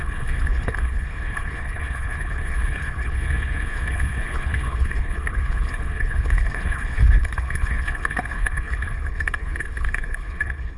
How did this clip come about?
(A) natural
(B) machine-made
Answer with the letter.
B